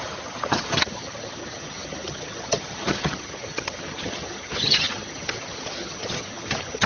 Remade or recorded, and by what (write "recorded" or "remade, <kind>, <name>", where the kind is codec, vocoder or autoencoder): remade, vocoder, HiFi-GAN